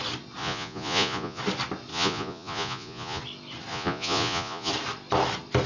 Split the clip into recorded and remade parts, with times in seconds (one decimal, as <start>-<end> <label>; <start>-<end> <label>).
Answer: 0.0-0.4 recorded; 0.4-1.4 remade; 1.4-1.9 recorded; 1.9-3.2 remade; 3.2-3.7 recorded; 3.7-4.7 remade; 4.7-5.7 recorded